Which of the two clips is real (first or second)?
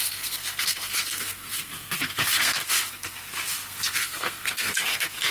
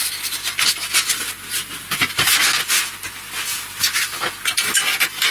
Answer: second